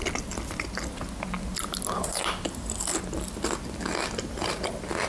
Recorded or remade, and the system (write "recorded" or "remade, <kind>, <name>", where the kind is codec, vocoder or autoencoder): recorded